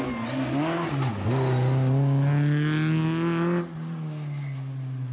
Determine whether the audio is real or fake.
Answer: real